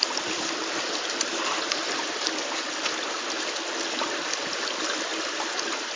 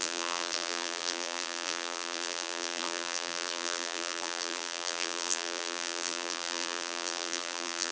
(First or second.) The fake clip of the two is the second